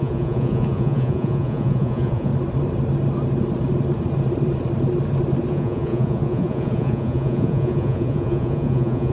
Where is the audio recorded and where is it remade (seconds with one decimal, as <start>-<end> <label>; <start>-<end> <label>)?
0.0-2.3 remade; 2.3-5.5 recorded; 5.5-9.1 remade